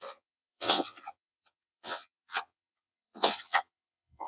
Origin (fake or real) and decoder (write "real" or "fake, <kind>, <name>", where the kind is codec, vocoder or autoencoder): fake, vocoder, WaveNeXt